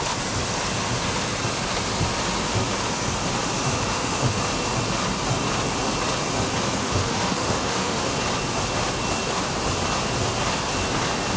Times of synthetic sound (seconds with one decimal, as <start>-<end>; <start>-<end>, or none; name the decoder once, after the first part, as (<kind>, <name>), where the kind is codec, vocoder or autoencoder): 3.9-4.4 (autoencoder, DAC-VAE); 6.8-8.1